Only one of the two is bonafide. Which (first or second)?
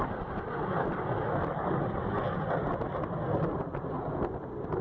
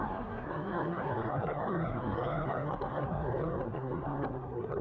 first